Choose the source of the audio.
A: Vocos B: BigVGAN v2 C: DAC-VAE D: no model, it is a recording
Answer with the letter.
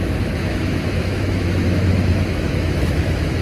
C